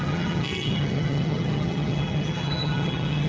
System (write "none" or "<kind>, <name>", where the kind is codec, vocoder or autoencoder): vocoder, HiFi-GAN